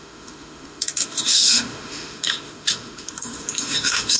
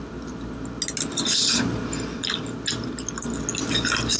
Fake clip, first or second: first